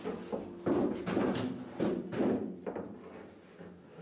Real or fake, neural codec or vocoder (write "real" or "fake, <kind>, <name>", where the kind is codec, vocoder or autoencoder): real